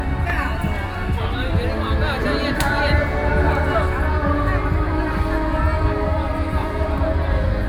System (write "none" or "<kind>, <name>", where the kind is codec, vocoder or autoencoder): none